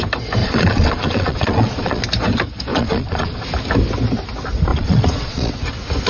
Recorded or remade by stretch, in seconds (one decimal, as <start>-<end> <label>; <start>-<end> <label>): 0.0-0.4 recorded; 0.4-2.0 remade; 2.0-2.7 recorded; 2.7-3.4 remade; 3.4-4.7 recorded; 4.7-5.5 remade; 5.5-6.1 recorded